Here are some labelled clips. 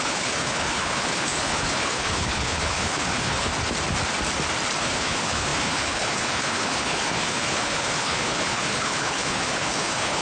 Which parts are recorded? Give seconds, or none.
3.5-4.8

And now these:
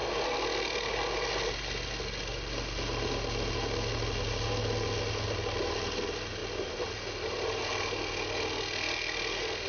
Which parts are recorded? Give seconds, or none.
0.0-9.7

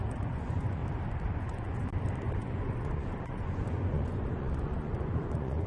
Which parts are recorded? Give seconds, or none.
0.8-1.4; 1.9-2.4

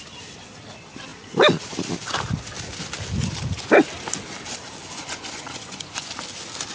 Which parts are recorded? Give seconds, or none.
0.0-4.8; 6.1-6.7

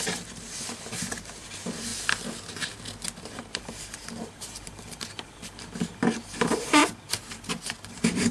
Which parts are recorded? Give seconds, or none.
1.9-3.2; 6.8-7.9